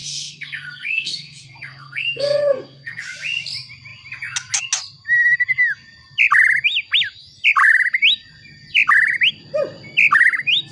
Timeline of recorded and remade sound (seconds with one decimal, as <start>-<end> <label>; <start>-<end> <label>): 0.0-3.0 remade; 3.0-10.7 recorded